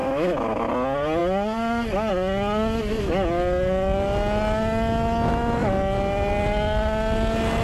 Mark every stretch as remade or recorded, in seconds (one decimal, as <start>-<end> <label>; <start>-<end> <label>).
0.0-0.7 remade; 0.7-7.6 recorded